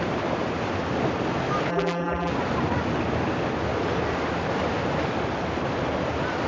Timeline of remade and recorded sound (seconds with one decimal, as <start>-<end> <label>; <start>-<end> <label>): 0.0-1.7 recorded; 1.7-2.3 remade; 2.3-6.5 recorded